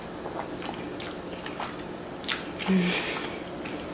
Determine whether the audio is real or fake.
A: real